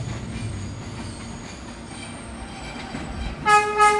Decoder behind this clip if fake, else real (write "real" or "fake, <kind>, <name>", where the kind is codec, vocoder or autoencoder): real